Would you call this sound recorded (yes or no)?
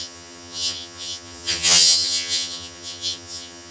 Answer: no